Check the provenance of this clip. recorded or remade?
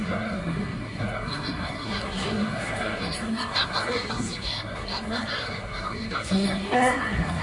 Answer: remade